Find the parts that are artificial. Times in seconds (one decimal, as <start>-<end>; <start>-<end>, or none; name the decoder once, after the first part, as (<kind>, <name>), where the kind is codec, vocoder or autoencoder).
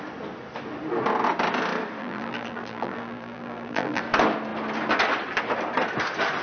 2.0-4.0 (vocoder, BigVGAN v2)